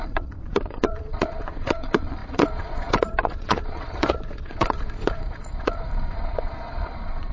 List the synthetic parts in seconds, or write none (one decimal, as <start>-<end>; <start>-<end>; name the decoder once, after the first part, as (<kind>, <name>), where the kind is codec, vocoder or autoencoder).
0.0-7.3 (vocoder, Vocos)